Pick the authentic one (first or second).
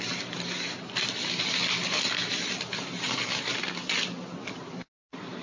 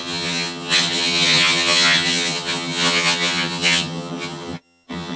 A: first